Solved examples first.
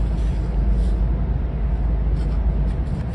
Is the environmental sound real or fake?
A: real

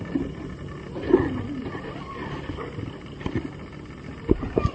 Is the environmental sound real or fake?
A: real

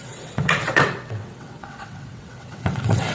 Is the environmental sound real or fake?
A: fake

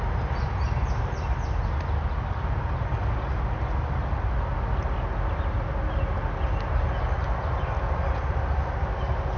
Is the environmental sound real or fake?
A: real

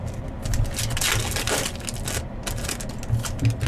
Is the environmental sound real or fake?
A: real